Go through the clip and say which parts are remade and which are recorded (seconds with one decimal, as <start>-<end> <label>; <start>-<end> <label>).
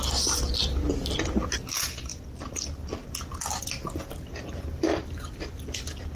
0.0-0.8 remade; 0.8-1.7 recorded; 1.7-2.1 remade; 2.1-3.6 recorded; 3.6-4.9 remade; 4.9-6.2 recorded